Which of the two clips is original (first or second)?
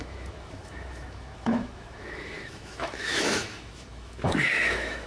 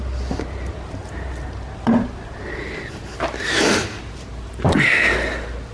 second